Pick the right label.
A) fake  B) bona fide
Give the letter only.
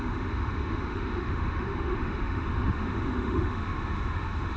A